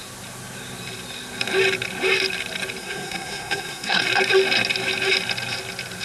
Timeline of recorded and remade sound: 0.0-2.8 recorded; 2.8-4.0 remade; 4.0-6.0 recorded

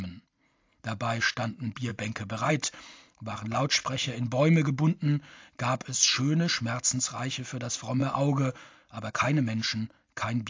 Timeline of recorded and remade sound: 0.0-10.5 recorded

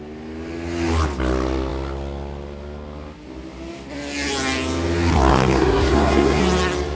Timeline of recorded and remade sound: 0.0-5.3 recorded; 5.3-6.4 remade; 6.4-6.9 recorded

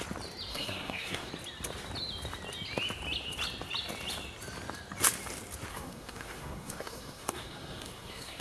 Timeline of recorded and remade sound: 0.0-0.5 recorded; 0.5-1.3 remade; 1.3-5.7 recorded; 5.7-8.4 remade

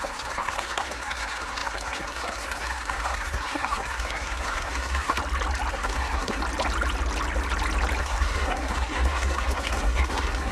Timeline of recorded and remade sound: 0.0-5.2 remade; 5.2-5.7 recorded; 5.7-6.4 remade; 6.4-8.0 recorded; 8.0-10.5 remade

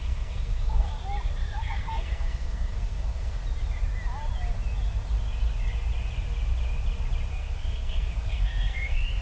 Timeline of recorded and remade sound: 0.0-0.9 remade; 0.9-1.6 recorded; 1.6-3.4 remade; 3.4-7.3 recorded; 7.3-9.2 remade